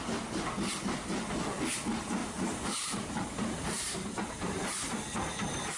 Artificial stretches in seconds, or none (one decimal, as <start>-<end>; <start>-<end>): 2.2-4.5